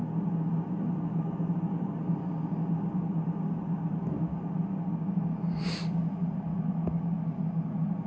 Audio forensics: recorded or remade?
recorded